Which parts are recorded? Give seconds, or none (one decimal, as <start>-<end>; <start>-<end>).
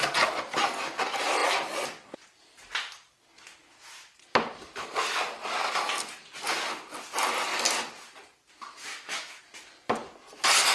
0.0-8.9; 9.4-10.7